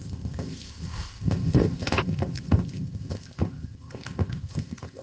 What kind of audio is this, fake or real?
fake